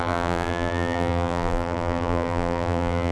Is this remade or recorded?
remade